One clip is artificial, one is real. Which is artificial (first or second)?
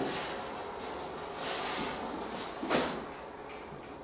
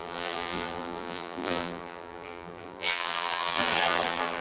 second